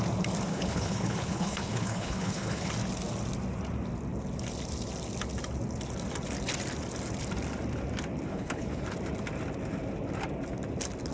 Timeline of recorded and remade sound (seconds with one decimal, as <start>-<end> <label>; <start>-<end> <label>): 0.0-0.5 recorded; 0.5-2.7 remade; 2.7-8.3 recorded; 8.3-8.8 remade; 8.8-11.1 recorded